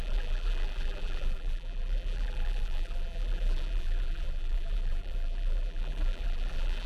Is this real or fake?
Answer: fake